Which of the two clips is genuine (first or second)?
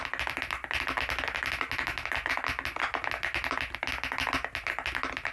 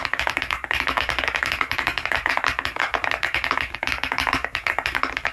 first